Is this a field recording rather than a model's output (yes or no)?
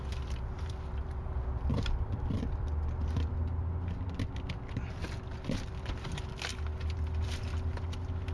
no